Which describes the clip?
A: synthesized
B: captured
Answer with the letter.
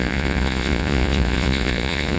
A